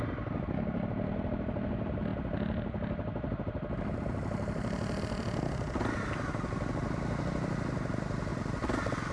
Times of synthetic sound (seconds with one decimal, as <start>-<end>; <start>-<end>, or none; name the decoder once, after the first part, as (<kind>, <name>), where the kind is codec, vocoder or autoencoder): none